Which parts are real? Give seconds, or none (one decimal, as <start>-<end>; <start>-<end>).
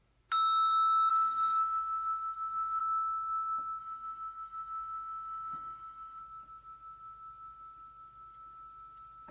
0.0-1.1; 2.8-3.8; 6.2-9.3